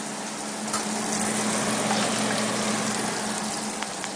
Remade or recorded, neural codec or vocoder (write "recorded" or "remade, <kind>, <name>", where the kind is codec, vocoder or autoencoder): recorded